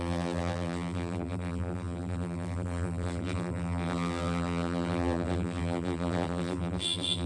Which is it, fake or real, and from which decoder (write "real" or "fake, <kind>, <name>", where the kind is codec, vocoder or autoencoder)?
fake, vocoder, BigVGAN v2